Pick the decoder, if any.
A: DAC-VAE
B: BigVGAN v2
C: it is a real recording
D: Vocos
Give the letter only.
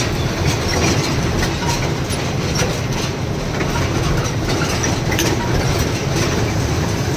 C